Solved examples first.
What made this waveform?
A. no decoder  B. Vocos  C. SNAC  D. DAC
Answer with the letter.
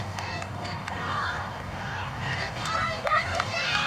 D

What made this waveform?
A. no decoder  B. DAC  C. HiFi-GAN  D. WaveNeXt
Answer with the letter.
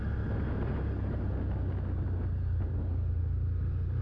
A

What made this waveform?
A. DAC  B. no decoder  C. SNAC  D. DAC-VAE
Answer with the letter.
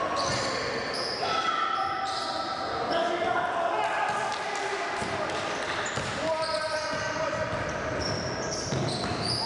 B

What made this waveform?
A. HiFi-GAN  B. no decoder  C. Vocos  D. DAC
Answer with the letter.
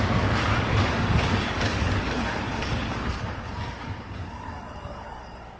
D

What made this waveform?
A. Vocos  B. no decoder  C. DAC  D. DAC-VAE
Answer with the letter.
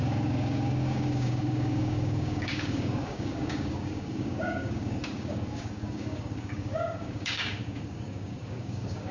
C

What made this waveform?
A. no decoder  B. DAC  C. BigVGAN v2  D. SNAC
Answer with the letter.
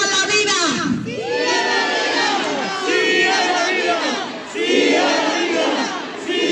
A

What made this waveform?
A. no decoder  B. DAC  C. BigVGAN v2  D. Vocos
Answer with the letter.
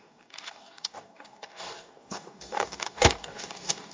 B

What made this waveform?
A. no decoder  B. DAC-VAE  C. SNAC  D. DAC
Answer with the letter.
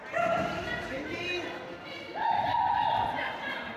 A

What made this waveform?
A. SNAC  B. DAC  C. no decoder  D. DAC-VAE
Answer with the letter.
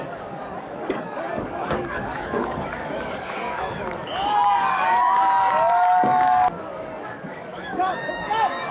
B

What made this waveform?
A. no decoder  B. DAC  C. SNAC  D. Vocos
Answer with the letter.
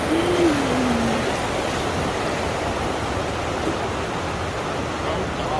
A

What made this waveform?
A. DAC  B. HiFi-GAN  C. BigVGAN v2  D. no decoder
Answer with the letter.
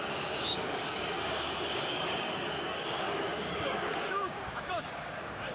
A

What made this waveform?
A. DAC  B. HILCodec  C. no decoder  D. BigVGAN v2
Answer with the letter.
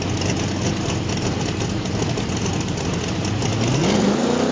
C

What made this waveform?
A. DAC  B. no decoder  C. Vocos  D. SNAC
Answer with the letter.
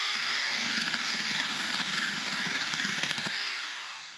A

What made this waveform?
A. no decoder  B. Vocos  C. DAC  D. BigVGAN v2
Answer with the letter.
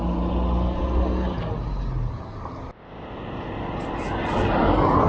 A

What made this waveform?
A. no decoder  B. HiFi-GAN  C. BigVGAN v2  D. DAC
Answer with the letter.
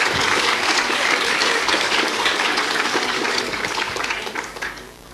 D